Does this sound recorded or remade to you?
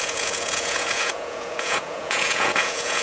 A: remade